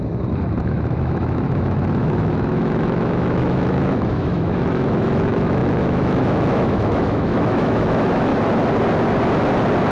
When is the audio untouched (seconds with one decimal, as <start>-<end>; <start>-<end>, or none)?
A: 8.3-9.9